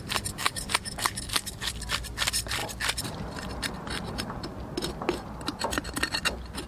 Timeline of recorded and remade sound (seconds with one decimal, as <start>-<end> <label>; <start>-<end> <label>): 0.0-0.4 recorded; 0.4-1.7 remade; 1.7-6.7 recorded